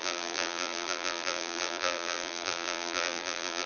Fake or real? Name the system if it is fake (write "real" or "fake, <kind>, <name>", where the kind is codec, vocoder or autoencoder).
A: fake, vocoder, BigVGAN v2